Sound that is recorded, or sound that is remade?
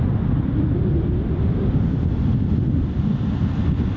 recorded